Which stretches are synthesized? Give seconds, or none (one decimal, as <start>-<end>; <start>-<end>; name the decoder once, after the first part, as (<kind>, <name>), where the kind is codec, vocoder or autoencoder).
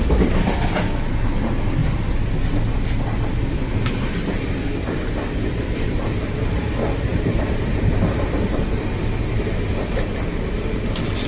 4.8-5.9 (vocoder, BigVGAN v2); 7.1-9.7